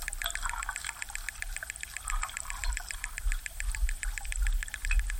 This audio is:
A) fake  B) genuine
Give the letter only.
B